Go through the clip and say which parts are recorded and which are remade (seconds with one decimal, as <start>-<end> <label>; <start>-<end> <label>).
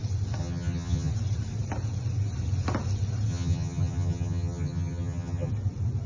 0.0-0.4 recorded; 0.4-1.1 remade; 1.1-3.3 recorded; 3.3-5.5 remade; 5.5-6.1 recorded